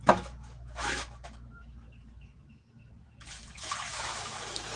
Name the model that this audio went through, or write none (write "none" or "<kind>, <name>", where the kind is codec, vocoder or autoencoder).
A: autoencoder, DAC-VAE